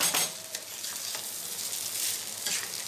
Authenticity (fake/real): real